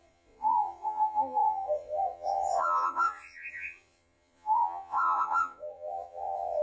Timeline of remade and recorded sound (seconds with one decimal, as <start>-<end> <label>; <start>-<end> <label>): 0.0-6.6 remade